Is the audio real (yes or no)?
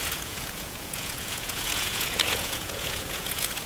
no